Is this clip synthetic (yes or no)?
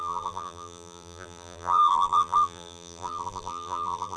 yes